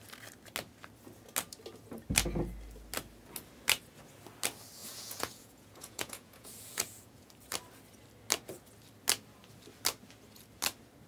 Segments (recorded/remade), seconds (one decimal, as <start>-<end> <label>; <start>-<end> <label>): 0.0-4.8 recorded; 4.8-7.3 remade; 7.3-11.1 recorded